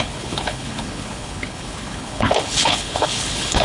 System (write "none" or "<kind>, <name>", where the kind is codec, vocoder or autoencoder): codec, HILCodec